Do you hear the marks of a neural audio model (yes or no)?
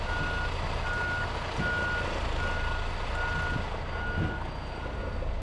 no